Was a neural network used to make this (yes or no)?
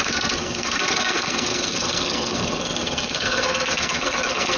yes